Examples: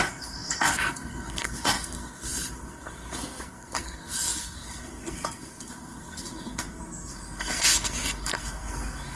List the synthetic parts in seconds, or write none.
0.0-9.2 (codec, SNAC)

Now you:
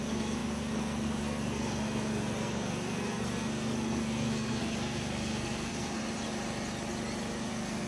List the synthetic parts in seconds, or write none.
0.0-6.0 (codec, SNAC); 7.5-7.9

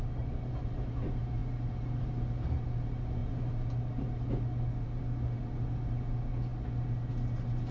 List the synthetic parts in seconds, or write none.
none